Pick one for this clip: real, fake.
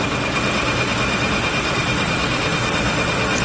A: real